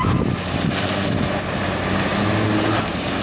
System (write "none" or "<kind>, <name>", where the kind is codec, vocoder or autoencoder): none